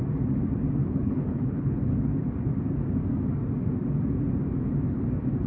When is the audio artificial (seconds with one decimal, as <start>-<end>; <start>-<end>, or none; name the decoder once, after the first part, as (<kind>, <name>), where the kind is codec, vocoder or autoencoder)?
0.8-2.1 (codec, HILCodec)